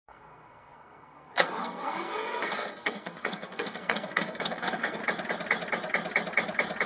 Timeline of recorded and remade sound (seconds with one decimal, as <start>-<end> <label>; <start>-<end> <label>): 0.0-5.0 remade; 5.0-6.9 recorded